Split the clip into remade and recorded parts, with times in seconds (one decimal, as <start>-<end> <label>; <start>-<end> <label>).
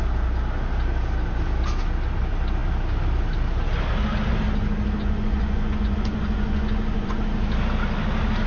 0.0-5.0 recorded; 5.0-7.2 remade; 7.2-8.5 recorded